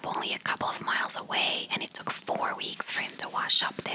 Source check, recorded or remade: recorded